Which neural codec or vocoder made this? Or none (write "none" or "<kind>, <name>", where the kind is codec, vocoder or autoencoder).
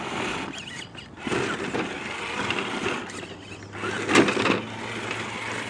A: none